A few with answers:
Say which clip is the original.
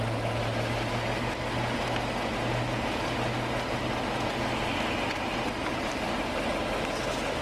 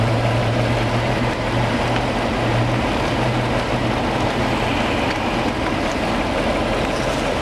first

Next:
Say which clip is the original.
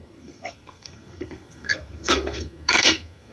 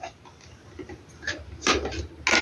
second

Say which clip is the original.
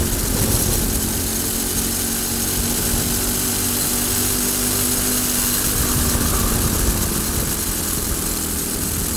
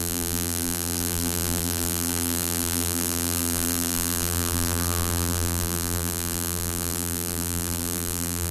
first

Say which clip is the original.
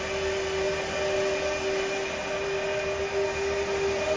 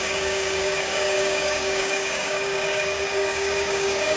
first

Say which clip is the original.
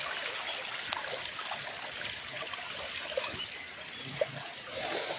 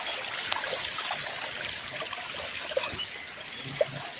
first